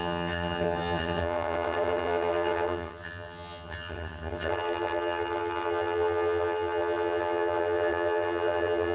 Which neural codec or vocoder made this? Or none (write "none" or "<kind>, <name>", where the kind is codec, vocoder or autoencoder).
vocoder, HiFi-GAN